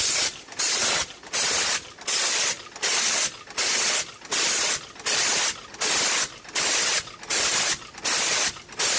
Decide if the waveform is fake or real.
real